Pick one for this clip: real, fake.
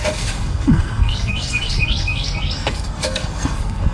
fake